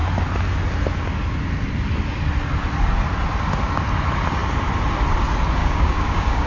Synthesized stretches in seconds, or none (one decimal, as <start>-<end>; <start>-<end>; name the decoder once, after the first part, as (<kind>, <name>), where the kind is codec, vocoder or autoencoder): 5.6-6.5 (codec, DAC)